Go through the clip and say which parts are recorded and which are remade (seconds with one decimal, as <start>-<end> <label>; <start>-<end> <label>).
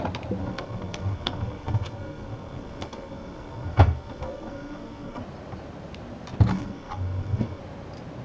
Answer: 0.0-0.4 recorded; 0.4-5.2 remade; 5.2-6.5 recorded; 6.5-7.6 remade; 7.6-8.2 recorded